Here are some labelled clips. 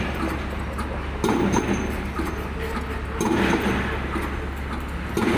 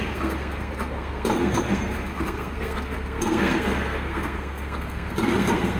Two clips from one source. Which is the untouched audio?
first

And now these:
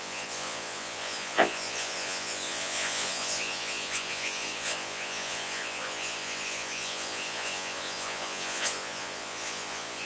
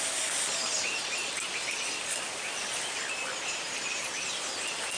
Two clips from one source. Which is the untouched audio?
second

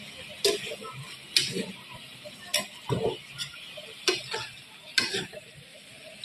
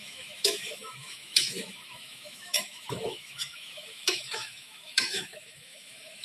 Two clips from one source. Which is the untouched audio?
first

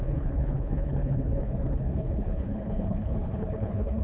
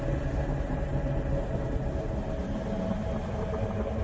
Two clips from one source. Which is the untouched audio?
second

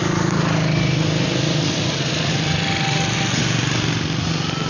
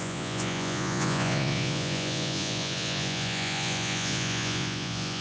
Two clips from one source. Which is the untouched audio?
first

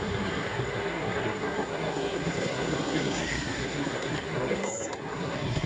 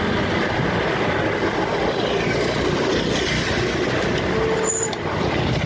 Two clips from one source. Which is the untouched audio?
second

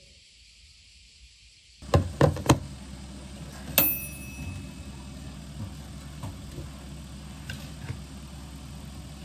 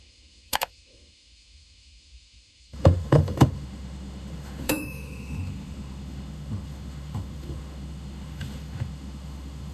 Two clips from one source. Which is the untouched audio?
first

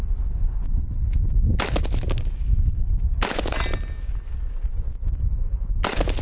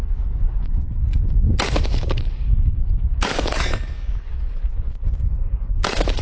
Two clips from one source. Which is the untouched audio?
first